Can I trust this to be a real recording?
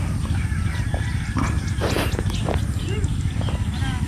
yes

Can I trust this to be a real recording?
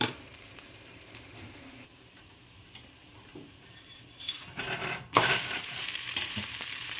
no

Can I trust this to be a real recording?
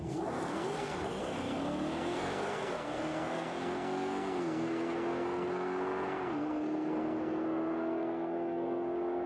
no